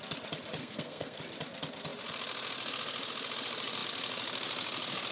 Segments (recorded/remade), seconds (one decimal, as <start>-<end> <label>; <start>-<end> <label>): 0.0-0.6 recorded; 0.6-1.2 remade; 1.2-5.1 recorded